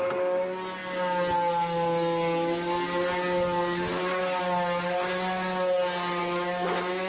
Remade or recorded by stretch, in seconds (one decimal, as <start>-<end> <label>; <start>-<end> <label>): 0.0-6.2 recorded; 6.2-7.1 remade

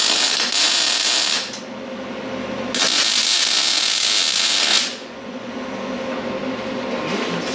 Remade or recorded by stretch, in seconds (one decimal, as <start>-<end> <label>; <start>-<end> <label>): 0.0-4.7 recorded; 4.7-5.5 remade; 5.5-7.5 recorded

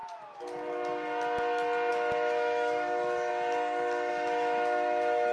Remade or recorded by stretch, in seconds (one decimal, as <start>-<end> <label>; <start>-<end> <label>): 0.0-1.9 recorded; 1.9-3.3 remade; 3.3-4.1 recorded; 4.1-5.3 remade

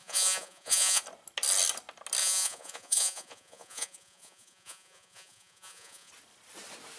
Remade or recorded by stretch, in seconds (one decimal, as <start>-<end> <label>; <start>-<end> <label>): 0.0-1.0 remade; 1.0-2.2 recorded; 2.2-6.1 remade; 6.1-7.0 recorded

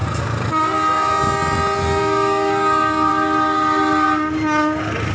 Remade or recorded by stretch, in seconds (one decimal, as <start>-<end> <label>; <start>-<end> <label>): 0.0-2.0 recorded; 2.0-3.1 remade; 3.1-5.1 recorded

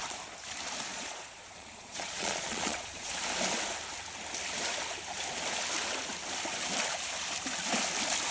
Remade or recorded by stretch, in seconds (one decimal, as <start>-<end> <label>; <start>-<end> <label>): 0.0-0.9 recorded; 0.9-3.1 remade; 3.1-8.3 recorded

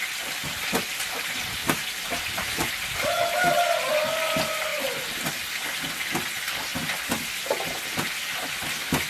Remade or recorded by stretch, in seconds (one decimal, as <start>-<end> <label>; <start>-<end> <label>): 0.0-1.6 recorded; 1.6-2.7 remade; 2.7-9.1 recorded